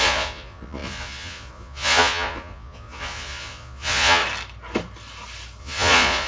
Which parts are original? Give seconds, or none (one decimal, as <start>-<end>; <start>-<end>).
4.2-5.6